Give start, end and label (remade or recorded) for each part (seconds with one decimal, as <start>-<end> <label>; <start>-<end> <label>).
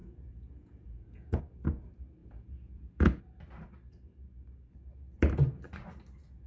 0.0-1.4 remade; 1.4-2.2 recorded; 2.2-3.2 remade; 3.2-6.5 recorded